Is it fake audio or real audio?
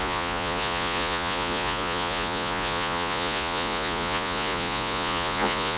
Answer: fake